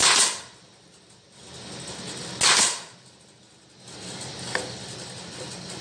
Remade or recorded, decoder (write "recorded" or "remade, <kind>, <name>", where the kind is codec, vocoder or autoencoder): recorded